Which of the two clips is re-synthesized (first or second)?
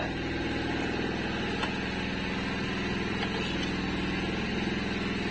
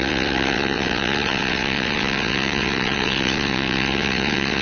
second